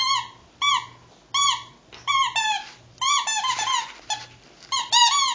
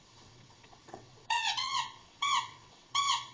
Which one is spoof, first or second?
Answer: second